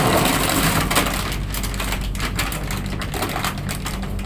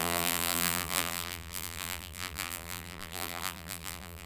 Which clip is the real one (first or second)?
first